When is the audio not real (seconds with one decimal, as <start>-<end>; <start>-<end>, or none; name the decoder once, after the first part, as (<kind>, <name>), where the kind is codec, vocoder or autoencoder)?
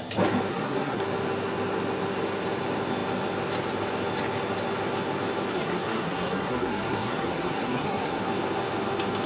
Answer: 0.5-1.0 (codec, SNAC); 5.5-8.2